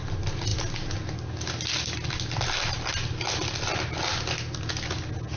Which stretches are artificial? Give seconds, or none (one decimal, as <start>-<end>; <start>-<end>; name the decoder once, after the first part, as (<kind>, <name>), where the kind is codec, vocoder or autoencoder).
none